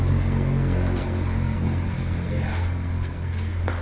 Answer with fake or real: fake